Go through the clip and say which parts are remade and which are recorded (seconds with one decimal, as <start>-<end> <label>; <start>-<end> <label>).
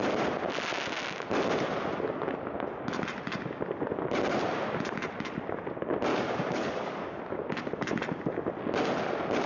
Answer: 0.0-6.1 recorded; 6.1-7.2 remade; 7.2-9.5 recorded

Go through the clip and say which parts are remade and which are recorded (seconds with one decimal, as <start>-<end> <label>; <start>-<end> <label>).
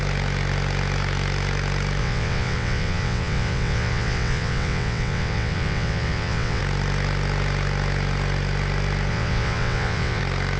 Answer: 0.0-2.0 recorded; 2.0-6.6 remade; 6.6-9.1 recorded; 9.1-10.2 remade; 10.2-10.6 recorded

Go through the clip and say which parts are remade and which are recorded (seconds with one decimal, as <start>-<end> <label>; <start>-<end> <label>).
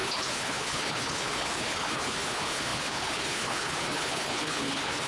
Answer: 0.0-5.1 remade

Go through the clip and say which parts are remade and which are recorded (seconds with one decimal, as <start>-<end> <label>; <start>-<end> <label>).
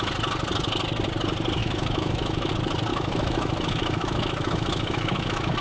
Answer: 0.0-1.6 recorded; 1.6-2.5 remade; 2.5-2.9 recorded; 2.9-5.6 remade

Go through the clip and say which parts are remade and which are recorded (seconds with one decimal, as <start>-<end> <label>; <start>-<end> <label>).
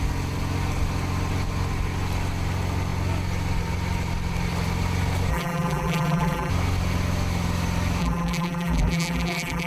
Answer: 0.0-5.3 recorded; 5.3-6.5 remade; 6.5-8.0 recorded; 8.0-9.7 remade